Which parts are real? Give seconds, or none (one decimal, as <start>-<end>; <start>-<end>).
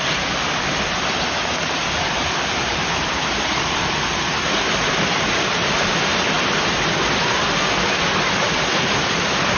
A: 0.0-3.2; 3.8-9.6